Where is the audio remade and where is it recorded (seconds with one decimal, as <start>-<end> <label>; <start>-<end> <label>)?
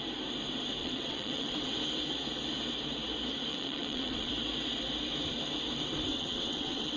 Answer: 0.0-0.8 recorded; 0.8-1.7 remade; 1.7-3.5 recorded; 3.5-4.3 remade; 4.3-6.1 recorded; 6.1-7.0 remade